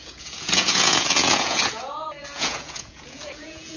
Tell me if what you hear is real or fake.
fake